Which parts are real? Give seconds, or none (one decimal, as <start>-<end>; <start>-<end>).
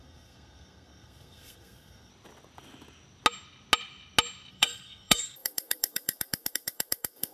2.1-4.5